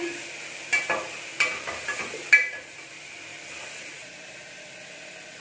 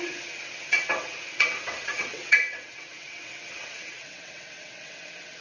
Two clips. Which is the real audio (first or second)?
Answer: first